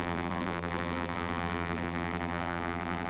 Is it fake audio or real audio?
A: fake